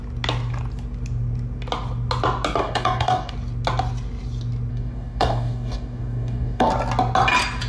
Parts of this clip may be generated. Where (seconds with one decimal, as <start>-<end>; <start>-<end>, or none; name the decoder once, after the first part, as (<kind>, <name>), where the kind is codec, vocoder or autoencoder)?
2.6-3.3 (codec, DAC); 4.7-6.7

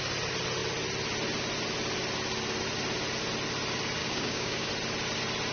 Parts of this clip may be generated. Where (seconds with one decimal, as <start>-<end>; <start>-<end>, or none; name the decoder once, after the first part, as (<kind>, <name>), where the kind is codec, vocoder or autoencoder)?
4.0-4.7 (codec, DAC)